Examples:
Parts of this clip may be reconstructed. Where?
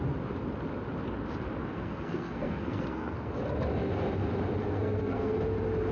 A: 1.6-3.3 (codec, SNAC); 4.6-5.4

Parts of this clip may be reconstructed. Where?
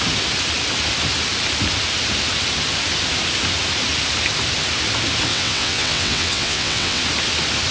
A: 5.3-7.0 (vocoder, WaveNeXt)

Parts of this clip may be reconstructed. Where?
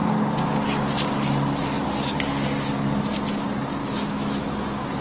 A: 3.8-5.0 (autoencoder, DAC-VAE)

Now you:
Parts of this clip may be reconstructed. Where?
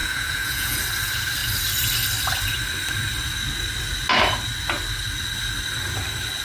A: 0.0-0.8 (vocoder, Vocos)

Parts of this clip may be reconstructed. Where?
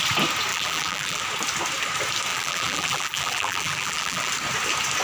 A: 0.5-1.2 (vocoder, BigVGAN v2); 2.3-4.3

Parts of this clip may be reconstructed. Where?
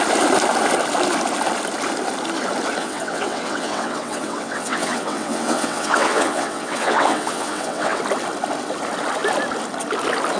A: 2.8-8.0 (vocoder, WaveNeXt)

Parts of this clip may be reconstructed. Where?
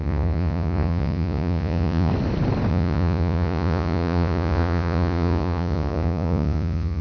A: 0.0-2.1 (vocoder, Vocos); 2.7-7.0